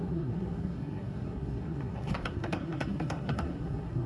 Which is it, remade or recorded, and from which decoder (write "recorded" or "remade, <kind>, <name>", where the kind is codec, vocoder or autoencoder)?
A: remade, codec, SNAC